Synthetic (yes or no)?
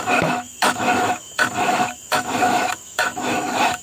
yes